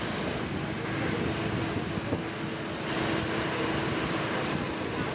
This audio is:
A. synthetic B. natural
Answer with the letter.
B